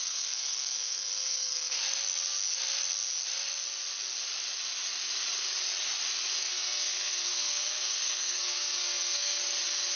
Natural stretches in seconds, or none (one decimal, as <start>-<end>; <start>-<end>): 1.8-6.4; 9.4-10.0